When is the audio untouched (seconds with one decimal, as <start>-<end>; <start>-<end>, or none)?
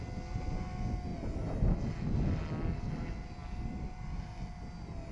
0.0-5.1